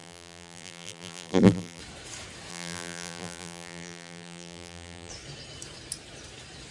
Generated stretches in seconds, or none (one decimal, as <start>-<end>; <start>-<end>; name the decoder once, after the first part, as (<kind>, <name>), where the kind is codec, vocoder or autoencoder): 0.0-1.8 (vocoder, BigVGAN v2); 2.5-5.1